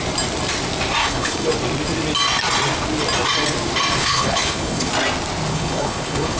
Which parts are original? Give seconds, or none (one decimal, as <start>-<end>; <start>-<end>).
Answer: 0.0-1.0; 1.5-4.0; 4.9-5.5